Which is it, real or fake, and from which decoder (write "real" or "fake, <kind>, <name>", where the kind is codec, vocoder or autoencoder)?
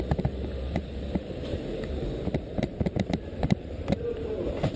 fake, vocoder, BigVGAN v2